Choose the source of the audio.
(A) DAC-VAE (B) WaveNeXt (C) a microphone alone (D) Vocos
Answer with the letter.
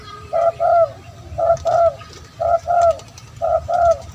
C